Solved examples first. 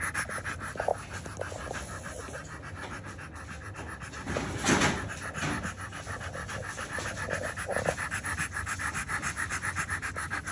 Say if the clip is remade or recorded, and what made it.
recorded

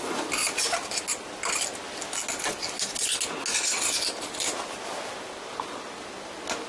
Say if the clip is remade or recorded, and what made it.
recorded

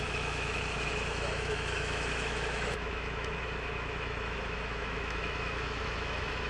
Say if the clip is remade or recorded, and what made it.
remade, autoencoder, DAC-VAE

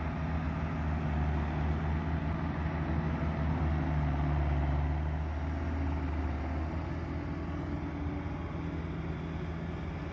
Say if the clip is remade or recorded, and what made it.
recorded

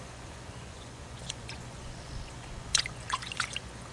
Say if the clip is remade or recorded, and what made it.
remade, vocoder, Vocos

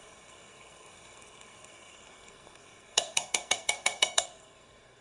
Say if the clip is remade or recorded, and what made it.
remade, codec, SNAC